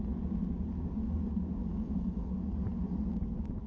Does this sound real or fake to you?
real